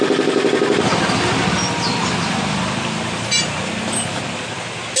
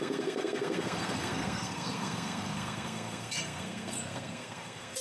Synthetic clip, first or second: second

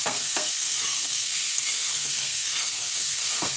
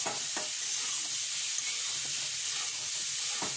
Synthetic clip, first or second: first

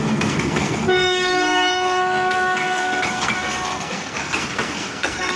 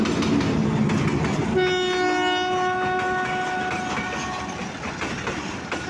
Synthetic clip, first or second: first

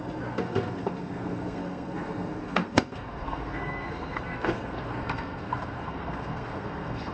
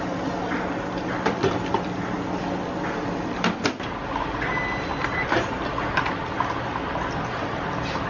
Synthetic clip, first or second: first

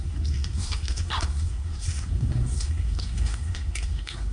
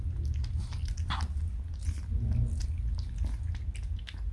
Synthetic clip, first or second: first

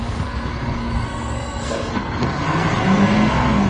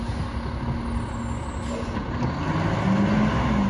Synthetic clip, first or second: first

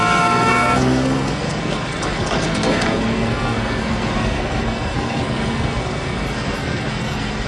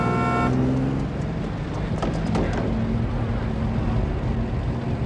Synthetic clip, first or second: first